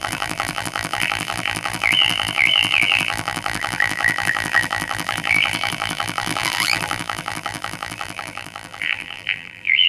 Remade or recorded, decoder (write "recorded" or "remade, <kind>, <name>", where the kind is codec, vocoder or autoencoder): remade, vocoder, BigVGAN v2